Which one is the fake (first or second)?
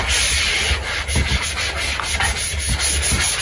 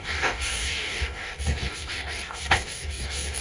second